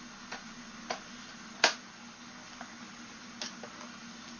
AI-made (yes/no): no